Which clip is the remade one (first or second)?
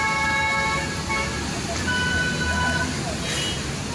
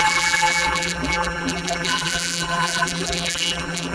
second